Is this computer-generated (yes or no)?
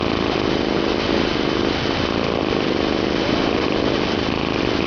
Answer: no